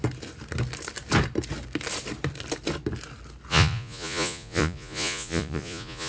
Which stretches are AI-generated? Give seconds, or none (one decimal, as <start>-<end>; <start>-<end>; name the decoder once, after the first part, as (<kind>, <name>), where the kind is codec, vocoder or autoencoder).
3.5-6.1 (vocoder, Vocos)